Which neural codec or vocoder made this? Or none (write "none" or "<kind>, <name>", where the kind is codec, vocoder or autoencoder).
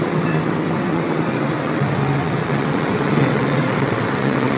vocoder, WaveNeXt